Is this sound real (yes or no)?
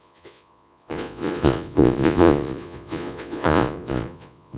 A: no